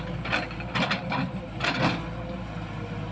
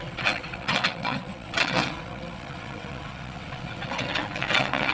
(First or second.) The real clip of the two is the first